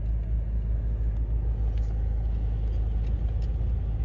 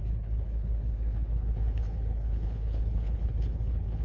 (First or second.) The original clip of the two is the first